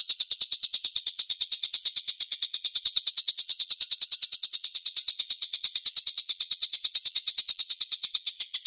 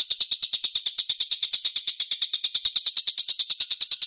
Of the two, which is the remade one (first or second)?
first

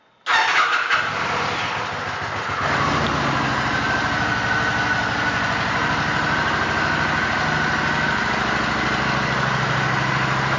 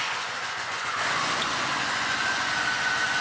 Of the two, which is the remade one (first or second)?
second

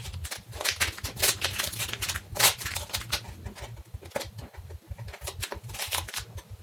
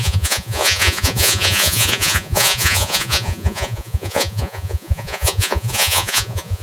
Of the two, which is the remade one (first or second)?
second